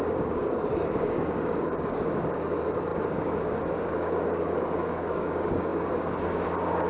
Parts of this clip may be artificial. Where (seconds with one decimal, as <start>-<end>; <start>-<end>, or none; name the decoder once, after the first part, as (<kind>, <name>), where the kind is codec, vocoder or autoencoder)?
0.0-6.9 (codec, DAC)